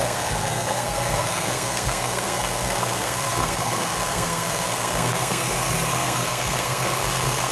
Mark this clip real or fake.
fake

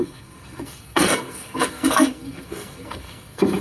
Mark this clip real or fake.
fake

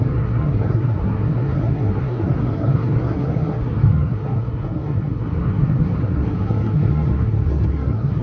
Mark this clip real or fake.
fake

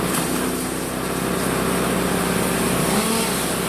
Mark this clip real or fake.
real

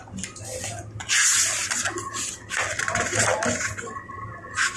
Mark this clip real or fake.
real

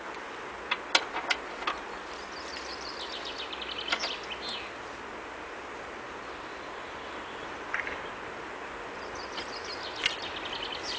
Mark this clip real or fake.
real